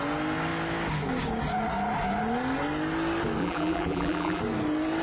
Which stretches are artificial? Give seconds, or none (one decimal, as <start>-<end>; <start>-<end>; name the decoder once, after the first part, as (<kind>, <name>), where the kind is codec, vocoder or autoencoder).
3.4-4.4 (vocoder, BigVGAN v2)